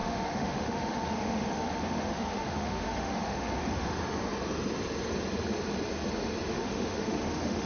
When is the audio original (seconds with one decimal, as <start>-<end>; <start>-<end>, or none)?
4.0-6.5